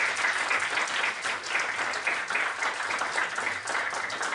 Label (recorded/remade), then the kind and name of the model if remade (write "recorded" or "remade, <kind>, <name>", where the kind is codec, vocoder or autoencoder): recorded